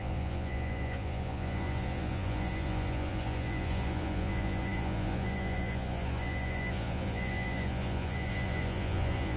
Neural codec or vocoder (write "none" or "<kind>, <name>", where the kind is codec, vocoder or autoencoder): vocoder, Vocos